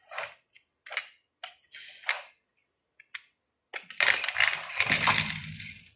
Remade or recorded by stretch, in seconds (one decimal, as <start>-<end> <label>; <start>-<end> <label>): 0.0-6.0 recorded

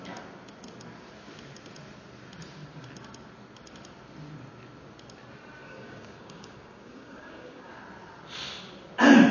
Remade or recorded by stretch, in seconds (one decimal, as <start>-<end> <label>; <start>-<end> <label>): 0.0-5.6 recorded; 5.6-7.7 remade; 7.7-9.3 recorded